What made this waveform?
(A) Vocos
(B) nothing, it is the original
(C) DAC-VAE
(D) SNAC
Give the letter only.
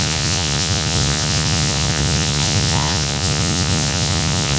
A